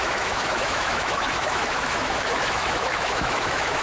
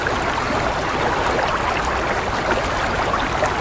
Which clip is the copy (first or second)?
first